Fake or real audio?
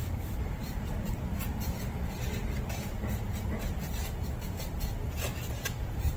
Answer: fake